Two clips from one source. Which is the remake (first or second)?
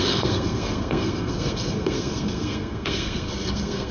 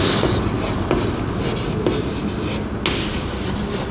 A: first